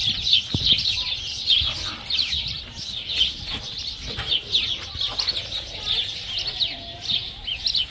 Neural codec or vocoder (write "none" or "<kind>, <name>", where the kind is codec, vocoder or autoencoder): none